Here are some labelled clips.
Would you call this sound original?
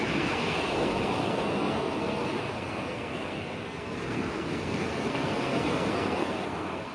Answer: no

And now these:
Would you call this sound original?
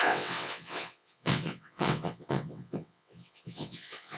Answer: no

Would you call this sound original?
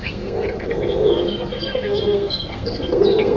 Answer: no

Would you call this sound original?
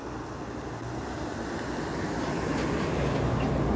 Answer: yes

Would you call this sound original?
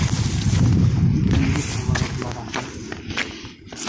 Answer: yes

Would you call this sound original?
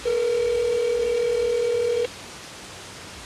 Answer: yes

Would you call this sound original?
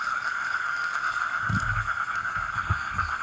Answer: no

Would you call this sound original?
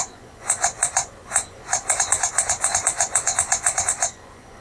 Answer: no